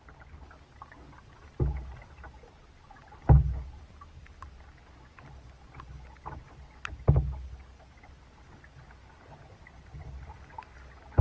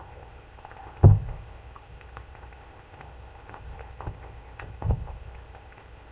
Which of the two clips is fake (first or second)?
second